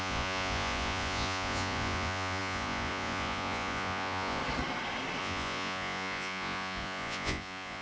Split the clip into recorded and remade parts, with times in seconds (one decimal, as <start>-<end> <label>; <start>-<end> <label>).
0.0-4.4 remade; 4.4-5.2 recorded; 5.2-7.8 remade